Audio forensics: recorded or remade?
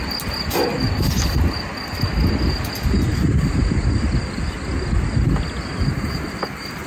recorded